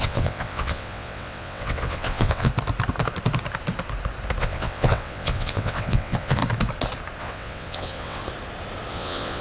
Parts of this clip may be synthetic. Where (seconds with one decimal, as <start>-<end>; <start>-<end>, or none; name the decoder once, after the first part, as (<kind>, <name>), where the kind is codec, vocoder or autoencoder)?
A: 0.0-2.5 (vocoder, WaveNeXt); 4.4-6.4; 7.2-8.2; 8.9-9.4